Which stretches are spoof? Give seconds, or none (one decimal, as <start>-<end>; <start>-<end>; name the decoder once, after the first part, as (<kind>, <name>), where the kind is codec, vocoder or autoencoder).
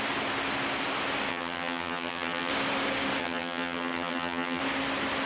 1.3-2.5 (vocoder, HiFi-GAN); 3.2-4.6